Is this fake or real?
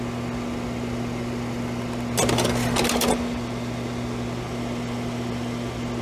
real